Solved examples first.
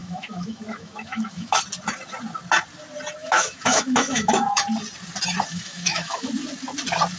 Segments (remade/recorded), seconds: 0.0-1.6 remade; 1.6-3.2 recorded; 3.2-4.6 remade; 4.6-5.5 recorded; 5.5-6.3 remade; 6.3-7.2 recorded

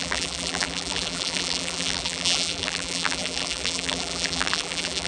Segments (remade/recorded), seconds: 0.0-5.1 remade